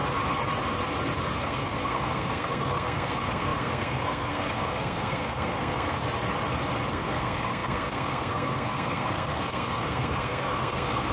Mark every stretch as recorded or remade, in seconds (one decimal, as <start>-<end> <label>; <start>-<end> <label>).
0.0-1.3 recorded; 1.3-6.0 remade; 6.0-6.9 recorded; 6.9-11.1 remade